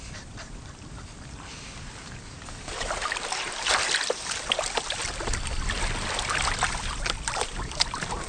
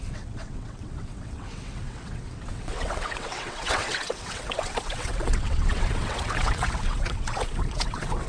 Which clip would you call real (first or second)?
first